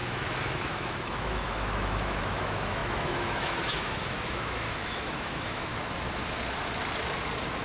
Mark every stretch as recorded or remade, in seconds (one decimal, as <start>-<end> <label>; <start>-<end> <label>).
0.0-5.7 remade; 5.7-7.6 recorded